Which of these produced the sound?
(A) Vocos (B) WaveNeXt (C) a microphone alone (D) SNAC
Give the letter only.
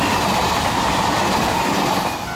C